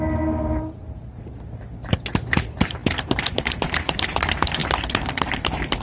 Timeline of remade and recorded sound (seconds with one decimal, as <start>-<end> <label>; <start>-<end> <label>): 0.0-5.8 remade